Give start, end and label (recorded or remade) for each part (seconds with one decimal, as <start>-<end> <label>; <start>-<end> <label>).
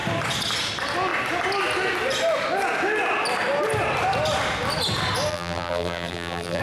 0.0-5.3 recorded; 5.3-6.6 remade